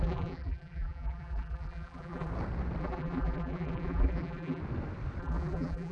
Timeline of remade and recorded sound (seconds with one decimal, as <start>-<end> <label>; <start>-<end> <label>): 0.0-2.3 remade; 2.3-2.8 recorded; 2.8-4.6 remade; 4.6-5.2 recorded; 5.2-5.9 remade